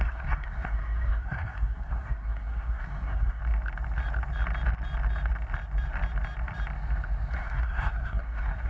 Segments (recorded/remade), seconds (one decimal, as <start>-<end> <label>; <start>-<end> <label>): 0.0-3.4 remade; 3.4-7.3 recorded; 7.3-8.7 remade